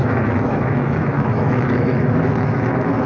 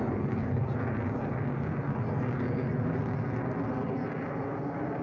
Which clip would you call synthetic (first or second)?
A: first